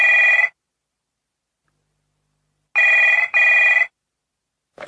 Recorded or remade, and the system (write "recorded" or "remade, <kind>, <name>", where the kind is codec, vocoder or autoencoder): recorded